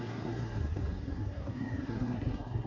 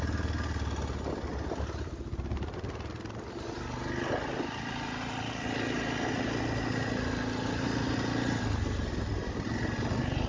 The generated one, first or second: first